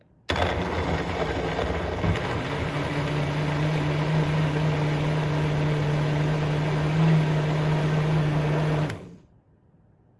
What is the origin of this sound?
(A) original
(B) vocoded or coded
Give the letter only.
A